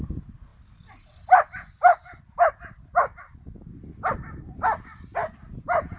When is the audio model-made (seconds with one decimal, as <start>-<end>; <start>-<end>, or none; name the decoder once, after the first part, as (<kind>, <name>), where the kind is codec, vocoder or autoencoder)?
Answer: none